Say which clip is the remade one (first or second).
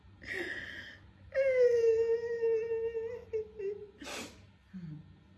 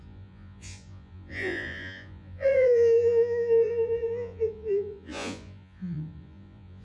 second